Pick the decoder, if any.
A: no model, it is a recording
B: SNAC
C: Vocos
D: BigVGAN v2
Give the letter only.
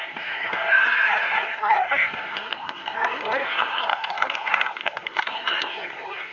B